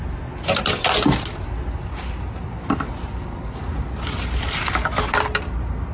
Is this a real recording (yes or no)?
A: yes